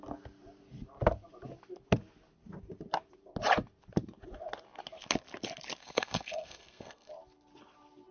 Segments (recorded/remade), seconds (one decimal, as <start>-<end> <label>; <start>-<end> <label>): 0.0-5.8 recorded; 5.8-7.1 remade; 7.1-8.1 recorded